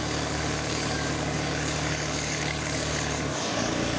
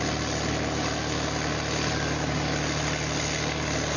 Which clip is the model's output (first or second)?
first